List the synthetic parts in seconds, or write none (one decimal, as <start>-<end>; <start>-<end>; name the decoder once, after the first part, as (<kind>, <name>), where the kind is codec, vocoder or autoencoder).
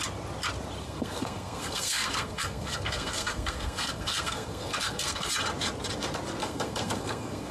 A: 0.8-5.3 (codec, SNAC); 6.4-7.5